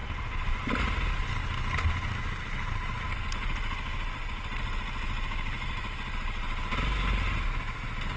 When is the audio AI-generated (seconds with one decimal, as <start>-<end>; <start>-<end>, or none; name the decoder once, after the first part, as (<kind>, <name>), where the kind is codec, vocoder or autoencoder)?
none